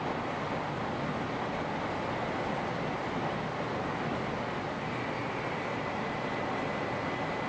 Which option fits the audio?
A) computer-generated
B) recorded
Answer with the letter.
B